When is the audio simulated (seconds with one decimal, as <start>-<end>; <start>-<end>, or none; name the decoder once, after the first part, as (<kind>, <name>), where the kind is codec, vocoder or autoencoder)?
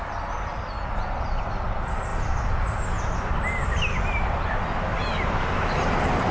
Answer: none